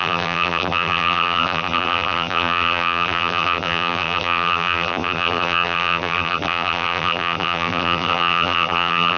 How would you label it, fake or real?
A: fake